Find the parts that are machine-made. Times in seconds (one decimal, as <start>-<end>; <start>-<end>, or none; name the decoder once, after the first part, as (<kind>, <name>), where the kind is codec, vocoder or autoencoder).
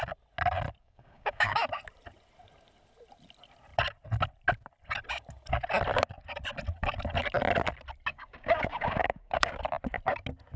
0.8-1.6 (codec, DAC); 8.1-9.6